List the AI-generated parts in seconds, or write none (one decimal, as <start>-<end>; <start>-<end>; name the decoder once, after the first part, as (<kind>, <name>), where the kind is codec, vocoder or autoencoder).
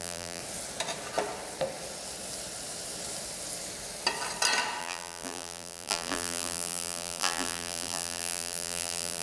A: 0.0-0.4 (vocoder, BigVGAN v2); 4.8-9.2